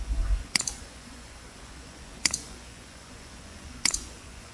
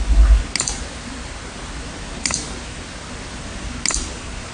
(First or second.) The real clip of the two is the second